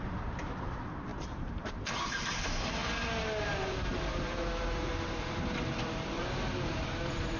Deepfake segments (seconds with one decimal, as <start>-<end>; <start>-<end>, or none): 0.0-2.8; 3.4-7.4